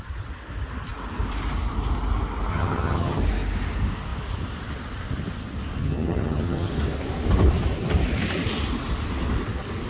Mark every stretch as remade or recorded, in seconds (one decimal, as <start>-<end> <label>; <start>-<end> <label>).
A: 0.0-2.5 recorded; 2.5-3.2 remade; 3.2-5.8 recorded; 5.8-6.7 remade; 6.7-9.9 recorded